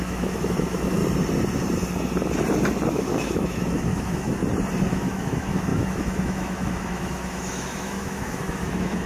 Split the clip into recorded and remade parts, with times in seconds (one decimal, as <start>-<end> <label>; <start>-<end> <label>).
0.0-1.0 remade; 1.0-2.9 recorded; 2.9-4.4 remade; 4.4-4.9 recorded; 4.9-9.1 remade